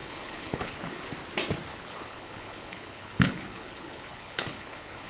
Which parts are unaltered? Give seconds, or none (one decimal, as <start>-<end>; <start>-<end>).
1.0-1.7